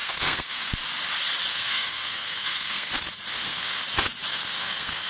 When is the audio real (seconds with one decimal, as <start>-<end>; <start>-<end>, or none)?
0.7-1.5; 2.9-3.3; 3.8-4.3